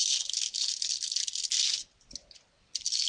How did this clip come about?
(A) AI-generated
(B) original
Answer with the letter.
B